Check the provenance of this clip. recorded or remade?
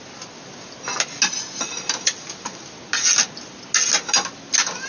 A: recorded